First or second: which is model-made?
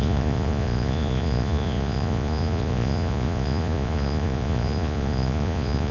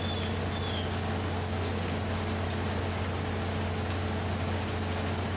first